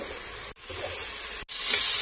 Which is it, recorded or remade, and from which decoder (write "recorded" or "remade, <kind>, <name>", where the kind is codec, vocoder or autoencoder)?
recorded